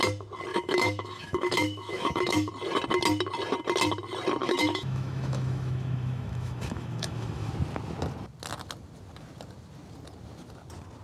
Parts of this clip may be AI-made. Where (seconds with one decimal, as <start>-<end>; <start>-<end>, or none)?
0.5-2.5; 4.4-7.5

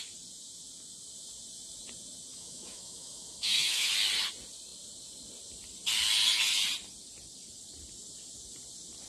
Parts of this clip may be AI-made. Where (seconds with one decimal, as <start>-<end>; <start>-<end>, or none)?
2.3-3.9